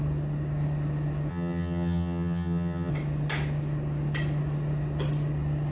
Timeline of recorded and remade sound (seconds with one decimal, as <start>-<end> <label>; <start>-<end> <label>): 0.0-1.3 recorded; 1.3-2.9 remade; 2.9-5.7 recorded